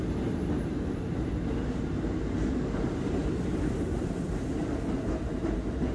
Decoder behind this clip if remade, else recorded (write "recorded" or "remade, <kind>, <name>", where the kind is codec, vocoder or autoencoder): recorded